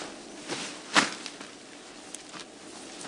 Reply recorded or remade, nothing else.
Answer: recorded